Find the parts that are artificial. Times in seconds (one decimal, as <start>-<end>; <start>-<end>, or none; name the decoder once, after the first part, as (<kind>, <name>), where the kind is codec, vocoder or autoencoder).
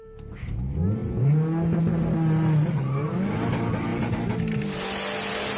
none